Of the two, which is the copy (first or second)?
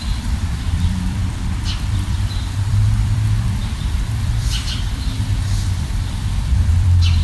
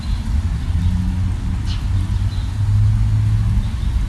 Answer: first